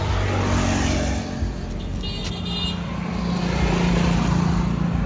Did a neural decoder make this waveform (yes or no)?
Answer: no